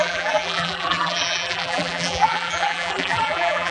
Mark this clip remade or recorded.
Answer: remade